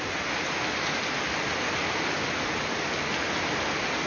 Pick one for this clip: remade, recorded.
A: recorded